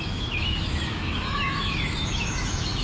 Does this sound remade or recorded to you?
remade